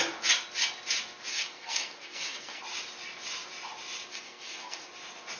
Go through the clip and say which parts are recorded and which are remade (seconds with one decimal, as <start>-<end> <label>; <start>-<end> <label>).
0.0-1.3 recorded; 1.3-2.6 remade; 2.6-4.1 recorded; 4.1-4.9 remade; 4.9-5.4 recorded